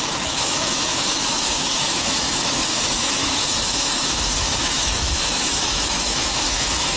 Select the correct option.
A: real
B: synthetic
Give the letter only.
B